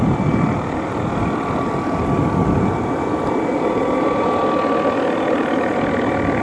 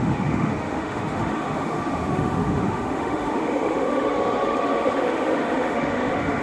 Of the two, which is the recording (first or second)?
first